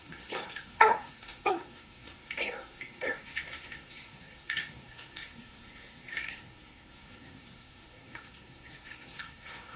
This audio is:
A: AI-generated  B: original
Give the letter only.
A